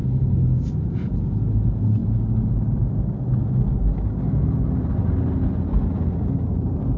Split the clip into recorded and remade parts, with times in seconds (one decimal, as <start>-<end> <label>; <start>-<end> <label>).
0.0-7.0 recorded